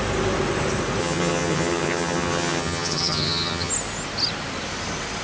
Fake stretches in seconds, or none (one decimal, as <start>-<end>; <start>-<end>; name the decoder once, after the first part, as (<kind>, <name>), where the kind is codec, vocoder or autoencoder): 1.0-3.7 (vocoder, HiFi-GAN)